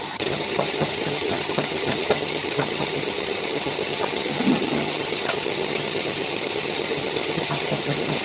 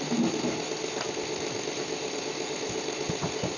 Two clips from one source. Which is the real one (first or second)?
second